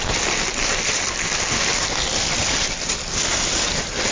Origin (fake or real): fake